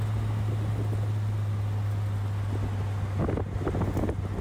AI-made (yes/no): no